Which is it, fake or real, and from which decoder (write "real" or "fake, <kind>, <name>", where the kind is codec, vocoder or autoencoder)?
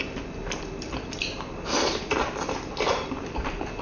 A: real